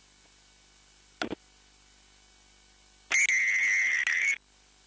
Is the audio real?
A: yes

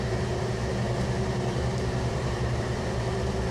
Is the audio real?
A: no